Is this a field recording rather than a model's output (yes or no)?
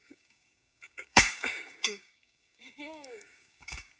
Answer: no